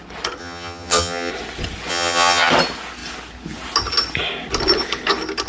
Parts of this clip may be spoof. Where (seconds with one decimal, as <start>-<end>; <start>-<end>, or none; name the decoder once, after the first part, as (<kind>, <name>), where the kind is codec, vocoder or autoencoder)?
0.4-1.3 (vocoder, HiFi-GAN); 1.9-2.5